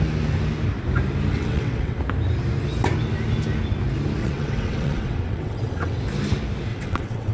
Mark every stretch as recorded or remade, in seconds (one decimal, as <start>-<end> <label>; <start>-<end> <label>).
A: 0.0-1.3 recorded; 1.3-2.0 remade; 2.0-4.2 recorded; 4.2-6.0 remade; 6.0-6.7 recorded; 6.7-7.3 remade